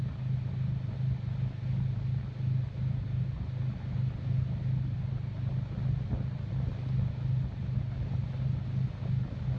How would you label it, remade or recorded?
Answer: recorded